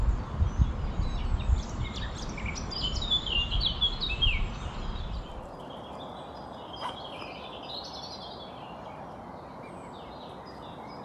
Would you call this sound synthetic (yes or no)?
no